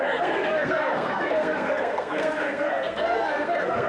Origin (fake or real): fake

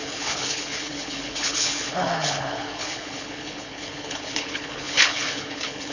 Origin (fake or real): fake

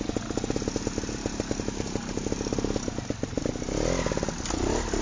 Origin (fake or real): real